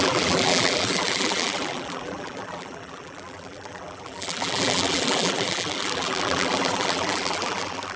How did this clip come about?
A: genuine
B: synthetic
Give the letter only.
B